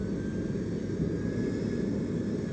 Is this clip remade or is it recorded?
recorded